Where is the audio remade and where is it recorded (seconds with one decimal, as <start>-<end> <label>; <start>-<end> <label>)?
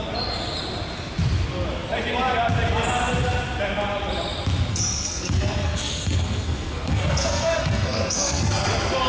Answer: 0.0-4.7 recorded; 4.7-8.5 remade; 8.5-9.1 recorded